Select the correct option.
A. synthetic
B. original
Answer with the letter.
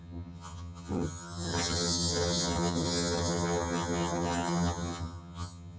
A